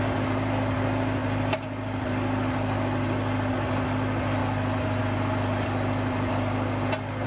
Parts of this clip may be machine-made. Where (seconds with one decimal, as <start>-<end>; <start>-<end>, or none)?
1.2-3.5; 4.4-5.0

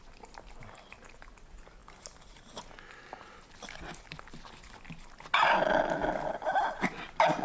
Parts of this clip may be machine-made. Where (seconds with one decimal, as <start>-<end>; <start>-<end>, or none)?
none

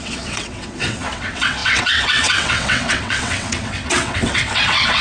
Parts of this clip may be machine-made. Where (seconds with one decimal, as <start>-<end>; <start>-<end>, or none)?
0.0-5.0

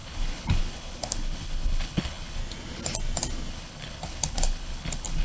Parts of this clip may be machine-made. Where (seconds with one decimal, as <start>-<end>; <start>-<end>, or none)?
0.0-2.4; 3.5-5.2